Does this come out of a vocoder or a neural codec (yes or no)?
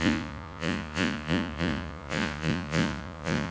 yes